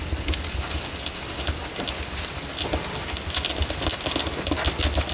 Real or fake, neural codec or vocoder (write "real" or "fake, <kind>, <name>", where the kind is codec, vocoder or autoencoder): real